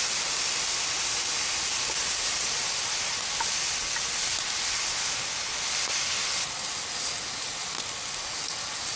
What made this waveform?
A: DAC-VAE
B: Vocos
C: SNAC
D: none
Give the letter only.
D